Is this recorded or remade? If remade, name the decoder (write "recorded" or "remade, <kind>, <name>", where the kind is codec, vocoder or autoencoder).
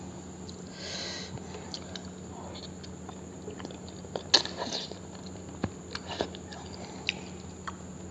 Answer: recorded